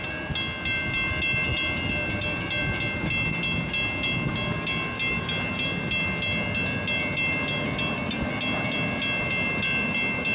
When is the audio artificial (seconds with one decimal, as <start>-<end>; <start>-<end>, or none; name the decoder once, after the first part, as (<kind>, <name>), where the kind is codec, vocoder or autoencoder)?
none